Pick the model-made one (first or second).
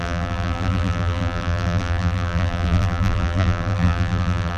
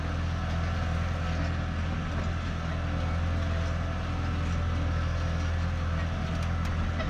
first